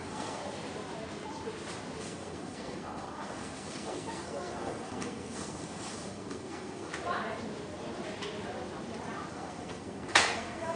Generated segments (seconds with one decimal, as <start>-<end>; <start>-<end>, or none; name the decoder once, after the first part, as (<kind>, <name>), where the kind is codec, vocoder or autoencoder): 0.0-0.4 (codec, SNAC); 2.0-6.9; 9.3-10.8